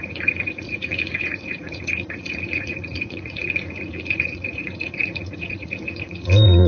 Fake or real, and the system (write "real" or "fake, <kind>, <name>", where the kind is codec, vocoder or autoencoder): fake, vocoder, Vocos